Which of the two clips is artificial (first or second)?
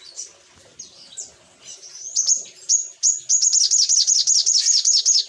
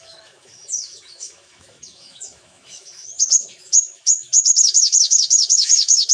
second